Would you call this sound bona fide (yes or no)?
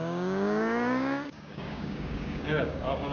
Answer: no